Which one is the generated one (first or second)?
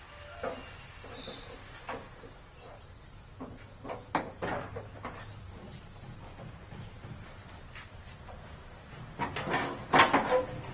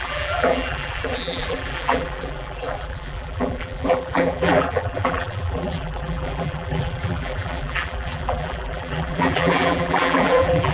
second